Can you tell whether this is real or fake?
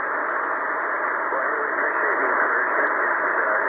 real